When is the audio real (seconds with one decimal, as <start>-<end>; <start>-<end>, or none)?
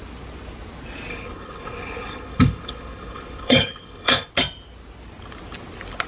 0.0-1.1; 4.3-6.1